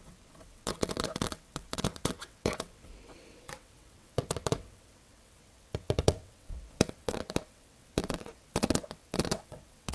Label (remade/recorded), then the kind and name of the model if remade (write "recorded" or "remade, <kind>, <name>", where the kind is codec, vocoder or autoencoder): remade, vocoder, WaveNeXt